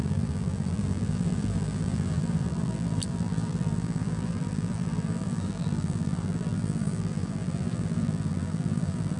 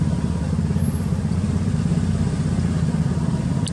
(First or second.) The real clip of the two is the second